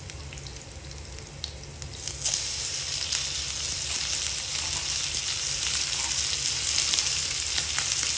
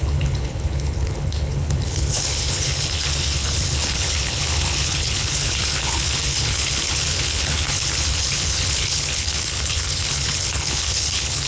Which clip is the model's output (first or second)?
second